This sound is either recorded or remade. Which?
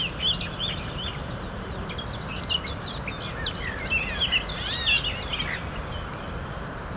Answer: recorded